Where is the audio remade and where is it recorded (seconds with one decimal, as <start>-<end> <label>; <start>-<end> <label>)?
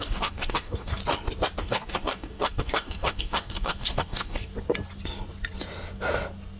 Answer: 0.0-1.0 remade; 1.0-1.6 recorded; 1.6-4.5 remade; 4.5-6.6 recorded